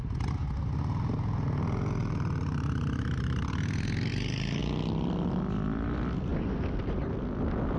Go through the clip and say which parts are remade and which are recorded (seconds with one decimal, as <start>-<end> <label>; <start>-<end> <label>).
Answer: 0.0-2.0 recorded; 2.0-3.5 remade; 3.5-7.8 recorded